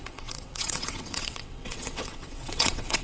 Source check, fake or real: fake